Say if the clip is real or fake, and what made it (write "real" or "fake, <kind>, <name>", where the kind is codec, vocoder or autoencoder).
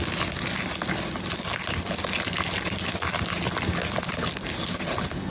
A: real